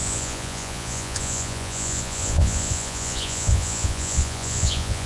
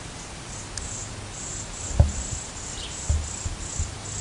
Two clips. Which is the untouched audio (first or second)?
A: second